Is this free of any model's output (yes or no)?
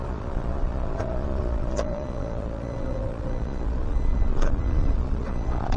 no